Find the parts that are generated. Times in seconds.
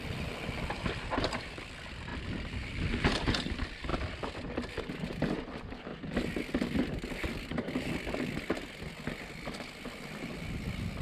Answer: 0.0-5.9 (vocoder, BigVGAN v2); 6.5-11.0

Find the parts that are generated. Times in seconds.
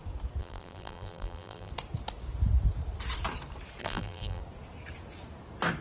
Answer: 0.4-1.7 (vocoder, BigVGAN v2); 3.8-4.4